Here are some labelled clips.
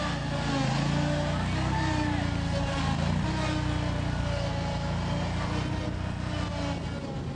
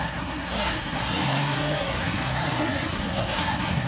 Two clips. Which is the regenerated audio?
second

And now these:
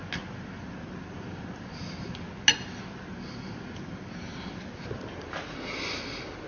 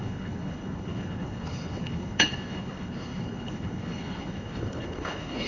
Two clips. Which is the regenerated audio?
second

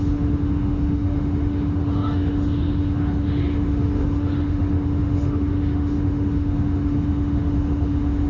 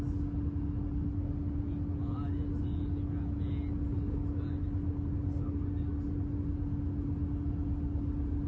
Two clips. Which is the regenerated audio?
first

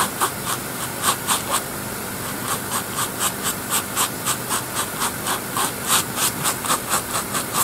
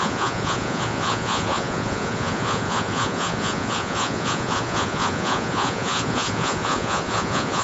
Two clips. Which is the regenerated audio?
second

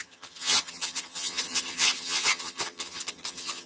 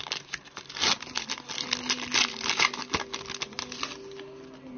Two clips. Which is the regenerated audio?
first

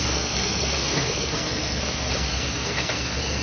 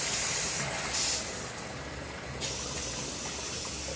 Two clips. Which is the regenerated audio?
first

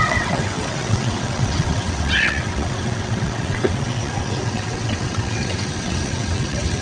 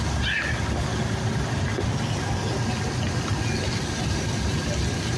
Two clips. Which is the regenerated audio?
first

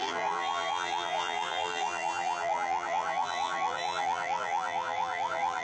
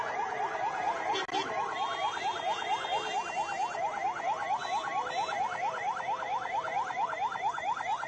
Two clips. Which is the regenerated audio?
first